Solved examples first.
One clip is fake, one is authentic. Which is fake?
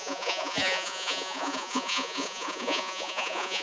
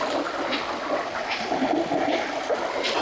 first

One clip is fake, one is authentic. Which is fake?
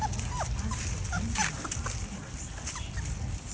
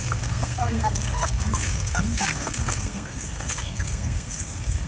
second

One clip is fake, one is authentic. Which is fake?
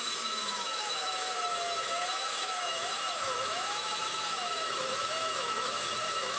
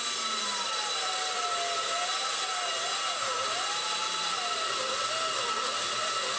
first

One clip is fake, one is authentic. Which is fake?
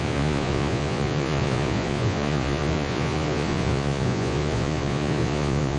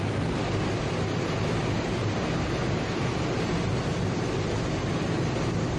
first